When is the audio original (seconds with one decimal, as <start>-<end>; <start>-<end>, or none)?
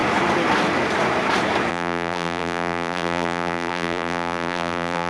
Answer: 0.0-1.7